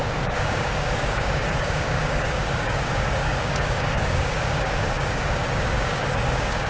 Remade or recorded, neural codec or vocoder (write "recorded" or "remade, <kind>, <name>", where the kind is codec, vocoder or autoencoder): remade, codec, DAC